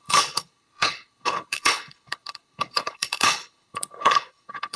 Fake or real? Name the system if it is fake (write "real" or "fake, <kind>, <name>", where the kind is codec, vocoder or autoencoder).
fake, codec, HILCodec